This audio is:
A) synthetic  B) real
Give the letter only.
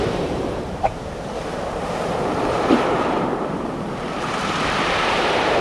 A